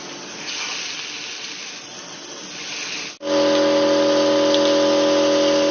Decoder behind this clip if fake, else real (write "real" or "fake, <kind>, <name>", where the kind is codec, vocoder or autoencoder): real